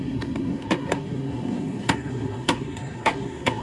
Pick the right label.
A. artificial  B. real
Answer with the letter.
A